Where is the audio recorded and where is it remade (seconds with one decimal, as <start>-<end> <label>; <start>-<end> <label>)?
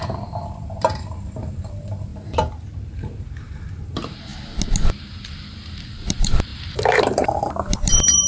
0.0-2.1 remade; 2.1-2.8 recorded; 2.8-4.3 remade; 4.3-4.9 recorded; 4.9-8.3 remade